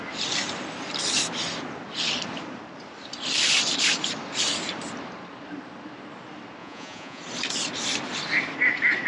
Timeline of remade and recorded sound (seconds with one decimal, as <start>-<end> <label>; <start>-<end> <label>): 0.0-6.6 recorded; 6.6-7.2 remade; 7.2-9.1 recorded